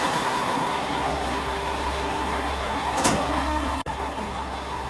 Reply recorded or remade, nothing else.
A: remade